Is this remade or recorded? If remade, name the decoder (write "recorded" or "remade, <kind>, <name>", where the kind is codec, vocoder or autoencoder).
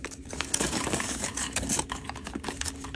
remade, codec, DAC